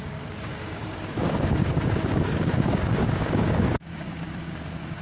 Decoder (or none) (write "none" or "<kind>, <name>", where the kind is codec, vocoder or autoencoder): codec, DAC